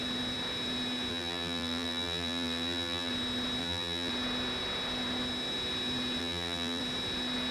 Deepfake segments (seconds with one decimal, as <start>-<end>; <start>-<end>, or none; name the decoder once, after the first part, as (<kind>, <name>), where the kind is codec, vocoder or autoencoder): 1.1-3.1 (vocoder, BigVGAN v2); 3.6-4.1; 6.2-6.8